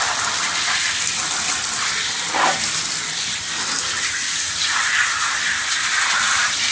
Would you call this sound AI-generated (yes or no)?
no